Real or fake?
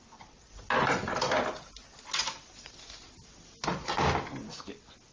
real